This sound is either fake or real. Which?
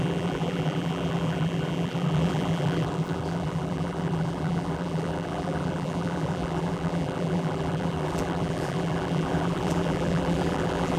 fake